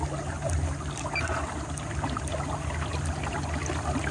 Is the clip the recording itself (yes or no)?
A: yes